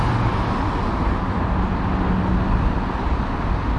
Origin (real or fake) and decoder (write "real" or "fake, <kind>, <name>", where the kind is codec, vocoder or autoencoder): real